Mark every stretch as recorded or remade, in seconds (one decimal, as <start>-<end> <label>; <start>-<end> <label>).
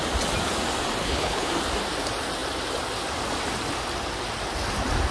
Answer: 0.0-1.0 recorded; 1.0-1.5 remade; 1.5-5.1 recorded